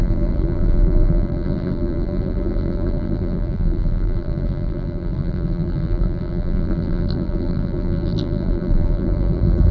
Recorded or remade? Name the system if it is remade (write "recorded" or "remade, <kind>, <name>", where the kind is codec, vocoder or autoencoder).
remade, vocoder, BigVGAN v2